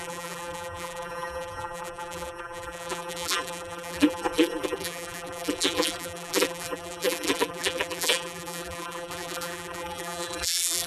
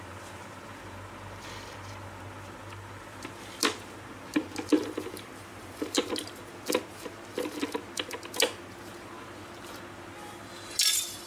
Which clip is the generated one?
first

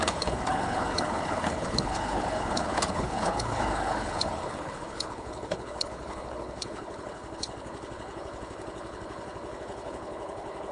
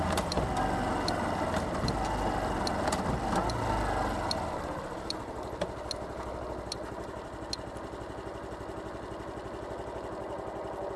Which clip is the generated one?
first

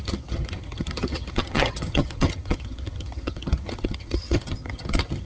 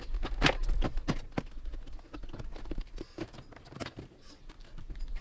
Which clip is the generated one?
first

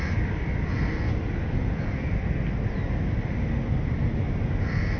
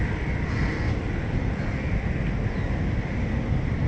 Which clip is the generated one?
second